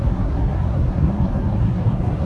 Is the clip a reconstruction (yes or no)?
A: yes